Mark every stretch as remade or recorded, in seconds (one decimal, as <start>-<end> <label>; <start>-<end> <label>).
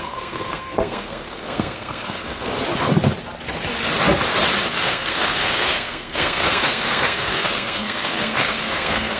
0.0-2.5 remade; 2.5-4.8 recorded; 4.8-9.2 remade